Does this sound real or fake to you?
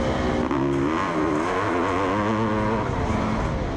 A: real